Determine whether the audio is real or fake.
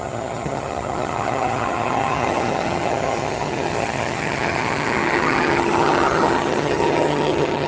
fake